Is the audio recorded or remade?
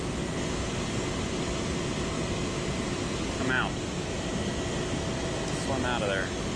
recorded